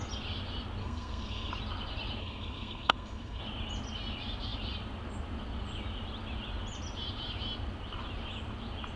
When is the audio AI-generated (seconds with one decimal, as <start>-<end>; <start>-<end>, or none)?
0.8-1.5; 2.2-3.4